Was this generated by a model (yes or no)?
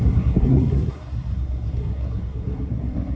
yes